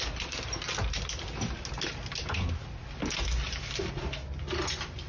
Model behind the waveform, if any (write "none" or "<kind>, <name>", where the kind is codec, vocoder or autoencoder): none